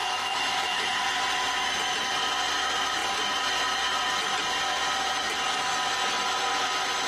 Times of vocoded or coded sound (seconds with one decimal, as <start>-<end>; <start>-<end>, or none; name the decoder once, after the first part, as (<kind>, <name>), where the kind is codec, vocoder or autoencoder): 0.0-1.0 (autoencoder, DAC-VAE)